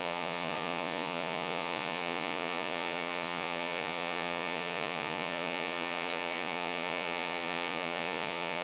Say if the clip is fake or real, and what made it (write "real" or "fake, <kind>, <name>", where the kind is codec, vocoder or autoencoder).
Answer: fake, vocoder, Vocos